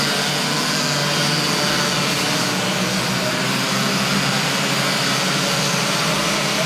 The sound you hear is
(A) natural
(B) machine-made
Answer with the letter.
A